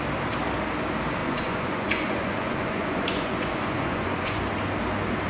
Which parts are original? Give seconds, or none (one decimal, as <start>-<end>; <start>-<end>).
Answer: 0.0-1.2; 4.4-5.3

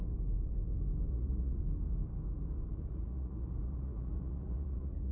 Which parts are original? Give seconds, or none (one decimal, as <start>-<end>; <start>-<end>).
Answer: 0.0-1.1; 1.6-2.7

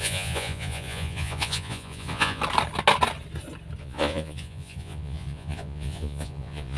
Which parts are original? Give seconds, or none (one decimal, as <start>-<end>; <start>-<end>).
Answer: 2.4-3.8

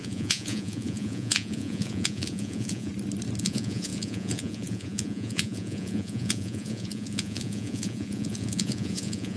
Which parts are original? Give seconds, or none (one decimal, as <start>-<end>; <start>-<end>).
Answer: 2.9-3.4